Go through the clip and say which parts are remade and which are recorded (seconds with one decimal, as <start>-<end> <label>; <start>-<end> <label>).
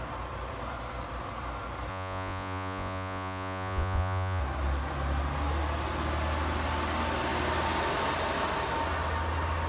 0.0-1.9 recorded; 1.9-4.4 remade; 4.4-9.7 recorded